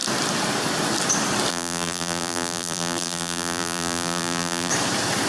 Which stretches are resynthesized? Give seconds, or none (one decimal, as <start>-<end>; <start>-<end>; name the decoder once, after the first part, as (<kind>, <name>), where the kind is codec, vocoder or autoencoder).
1.5-4.7 (vocoder, BigVGAN v2)